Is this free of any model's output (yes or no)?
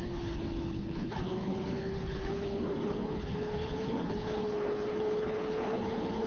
no